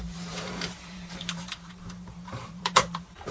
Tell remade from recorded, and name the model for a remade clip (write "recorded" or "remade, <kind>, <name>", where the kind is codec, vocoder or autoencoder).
remade, vocoder, BigVGAN v2